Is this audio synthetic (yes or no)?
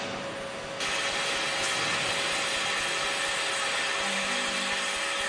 no